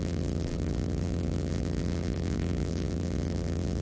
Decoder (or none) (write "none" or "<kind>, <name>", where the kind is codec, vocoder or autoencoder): vocoder, BigVGAN v2